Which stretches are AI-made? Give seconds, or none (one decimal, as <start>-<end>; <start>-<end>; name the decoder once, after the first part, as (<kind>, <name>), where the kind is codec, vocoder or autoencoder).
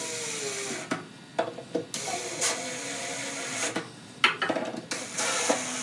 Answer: none